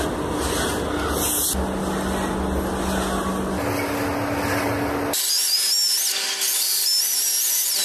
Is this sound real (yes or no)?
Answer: yes